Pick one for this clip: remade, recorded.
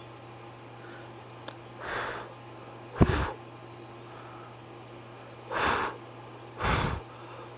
recorded